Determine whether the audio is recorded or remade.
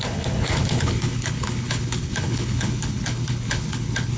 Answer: remade